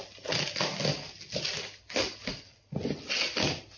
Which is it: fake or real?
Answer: real